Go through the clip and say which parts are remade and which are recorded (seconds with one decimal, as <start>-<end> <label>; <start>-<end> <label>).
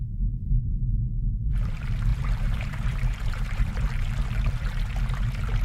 0.0-2.1 recorded; 2.1-3.7 remade; 3.7-5.6 recorded